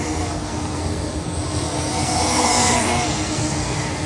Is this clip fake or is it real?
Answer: fake